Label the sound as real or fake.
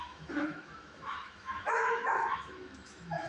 fake